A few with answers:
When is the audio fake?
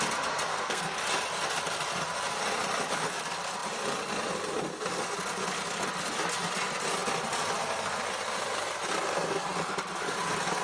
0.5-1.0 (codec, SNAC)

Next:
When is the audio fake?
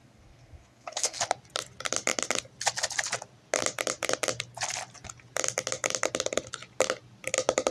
0.0-1.2 (codec, SNAC)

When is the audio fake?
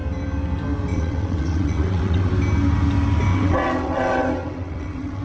0.9-2.3 (vocoder, WaveNeXt); 3.3-5.2